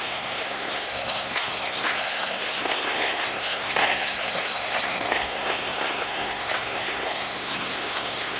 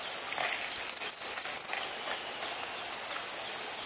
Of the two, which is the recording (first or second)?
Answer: second